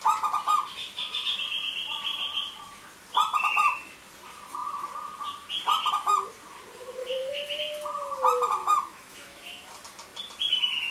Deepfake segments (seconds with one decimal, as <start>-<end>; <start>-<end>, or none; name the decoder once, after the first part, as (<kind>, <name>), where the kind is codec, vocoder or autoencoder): 7.0-7.6 (autoencoder, DAC-VAE); 8.6-9.7